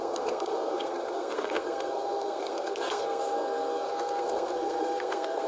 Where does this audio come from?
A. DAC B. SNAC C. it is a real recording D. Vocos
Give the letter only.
B